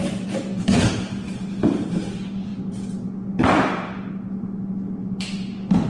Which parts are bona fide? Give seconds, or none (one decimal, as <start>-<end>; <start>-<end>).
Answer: 1.4-5.9

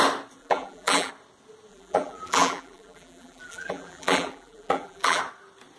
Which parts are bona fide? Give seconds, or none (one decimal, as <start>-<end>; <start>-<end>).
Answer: 0.0-0.4; 1.1-1.7; 5.2-5.8

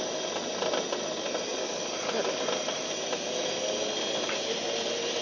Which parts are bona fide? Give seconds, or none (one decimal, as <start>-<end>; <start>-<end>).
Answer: 0.0-5.2